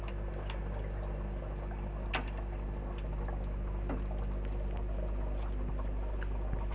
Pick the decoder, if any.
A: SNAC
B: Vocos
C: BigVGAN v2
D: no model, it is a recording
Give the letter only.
D